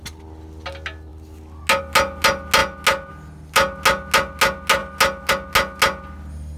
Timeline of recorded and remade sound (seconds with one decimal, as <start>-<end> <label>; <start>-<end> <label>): 0.0-6.6 recorded